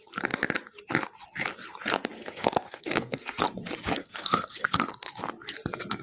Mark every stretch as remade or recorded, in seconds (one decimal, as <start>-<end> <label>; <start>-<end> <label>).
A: 0.0-2.2 recorded; 2.2-3.4 remade; 3.4-4.0 recorded; 4.0-4.9 remade; 4.9-6.0 recorded